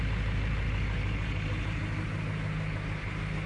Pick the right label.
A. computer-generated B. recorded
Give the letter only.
B